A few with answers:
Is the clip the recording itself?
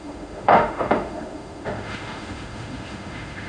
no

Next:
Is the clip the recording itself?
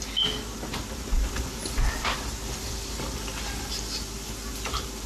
yes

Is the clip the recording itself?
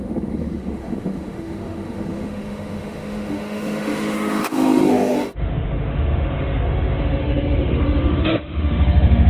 no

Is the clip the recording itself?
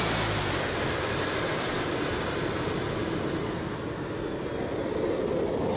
yes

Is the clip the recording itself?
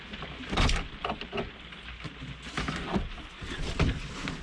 yes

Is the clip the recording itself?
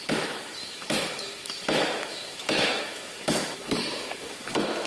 no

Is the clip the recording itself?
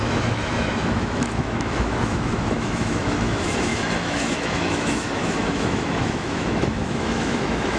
no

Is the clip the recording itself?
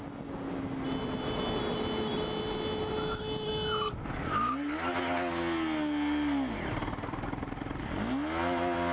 yes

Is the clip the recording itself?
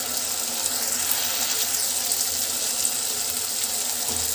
yes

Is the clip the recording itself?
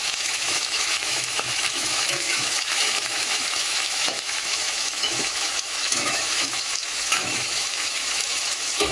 no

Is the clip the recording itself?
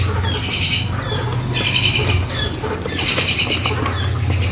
yes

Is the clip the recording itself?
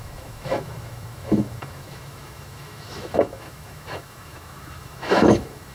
no